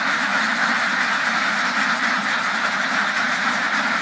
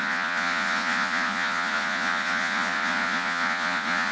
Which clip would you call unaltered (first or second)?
first